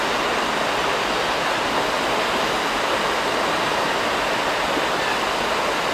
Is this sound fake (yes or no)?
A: no